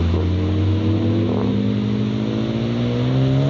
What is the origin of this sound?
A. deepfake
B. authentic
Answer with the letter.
B